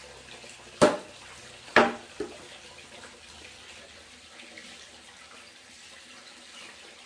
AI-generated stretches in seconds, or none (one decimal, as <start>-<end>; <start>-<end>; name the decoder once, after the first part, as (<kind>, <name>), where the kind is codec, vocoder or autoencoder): 0.0-1.7 (vocoder, BigVGAN v2); 2.7-7.1